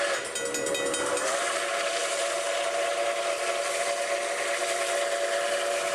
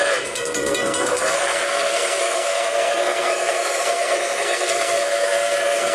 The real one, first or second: first